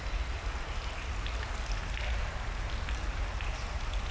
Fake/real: real